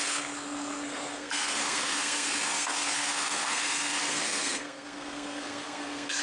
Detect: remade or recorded remade